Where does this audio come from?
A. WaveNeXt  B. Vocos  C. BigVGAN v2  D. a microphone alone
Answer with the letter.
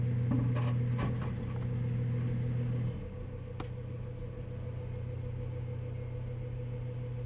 D